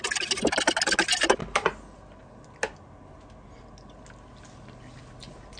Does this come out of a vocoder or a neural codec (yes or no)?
no